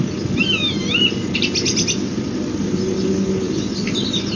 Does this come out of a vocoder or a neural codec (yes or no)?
no